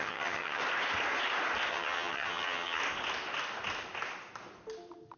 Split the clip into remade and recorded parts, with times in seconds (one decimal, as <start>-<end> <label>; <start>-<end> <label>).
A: 0.0-0.6 remade; 0.6-1.7 recorded; 1.7-2.8 remade; 2.8-5.2 recorded